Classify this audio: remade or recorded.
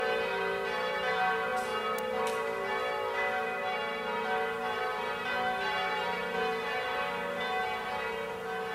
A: recorded